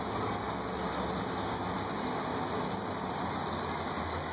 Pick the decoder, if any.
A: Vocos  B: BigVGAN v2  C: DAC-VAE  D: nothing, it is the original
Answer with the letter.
D